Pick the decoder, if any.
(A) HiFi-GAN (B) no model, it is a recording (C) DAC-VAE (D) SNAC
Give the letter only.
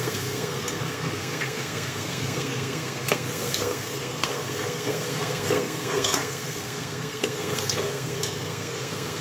D